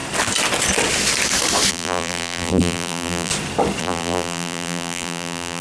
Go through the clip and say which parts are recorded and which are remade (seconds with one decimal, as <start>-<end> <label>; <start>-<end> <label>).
0.0-1.7 recorded; 1.7-3.3 remade; 3.3-3.8 recorded; 3.8-5.6 remade